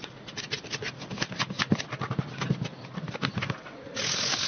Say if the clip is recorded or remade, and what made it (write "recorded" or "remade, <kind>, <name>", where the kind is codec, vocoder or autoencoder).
recorded